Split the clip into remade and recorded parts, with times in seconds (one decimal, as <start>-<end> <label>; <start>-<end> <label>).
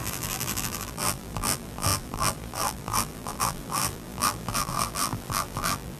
0.0-6.0 remade